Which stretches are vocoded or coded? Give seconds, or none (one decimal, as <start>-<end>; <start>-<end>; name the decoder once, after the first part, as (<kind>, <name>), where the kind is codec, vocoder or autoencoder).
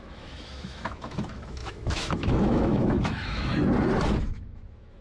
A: 0.0-3.5 (autoencoder, DAC-VAE); 4.2-5.0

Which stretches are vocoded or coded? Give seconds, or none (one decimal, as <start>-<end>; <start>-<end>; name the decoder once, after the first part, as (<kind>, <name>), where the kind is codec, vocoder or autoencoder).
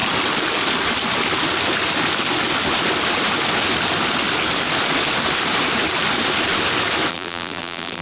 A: 7.1-8.0 (vocoder, BigVGAN v2)